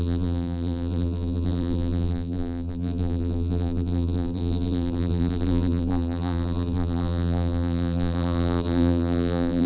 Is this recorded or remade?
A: remade